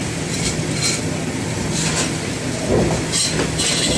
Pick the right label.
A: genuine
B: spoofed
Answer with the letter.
A